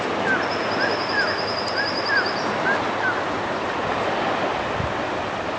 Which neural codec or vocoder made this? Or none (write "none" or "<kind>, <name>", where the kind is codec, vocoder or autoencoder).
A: none